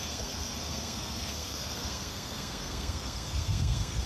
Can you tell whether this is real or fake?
fake